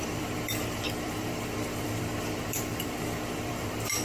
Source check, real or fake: fake